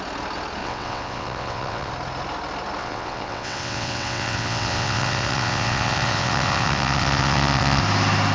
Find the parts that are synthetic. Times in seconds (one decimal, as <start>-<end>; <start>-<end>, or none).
0.6-1.9; 2.8-7.8